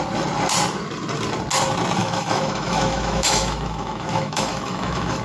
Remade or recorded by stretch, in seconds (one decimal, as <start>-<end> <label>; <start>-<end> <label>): 0.0-2.0 recorded; 2.0-5.2 remade